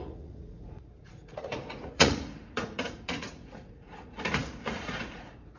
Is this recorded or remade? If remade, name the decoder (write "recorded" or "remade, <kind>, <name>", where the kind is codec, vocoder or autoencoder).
remade, vocoder, Vocos